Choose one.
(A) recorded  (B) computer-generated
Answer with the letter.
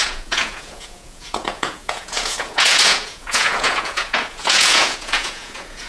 B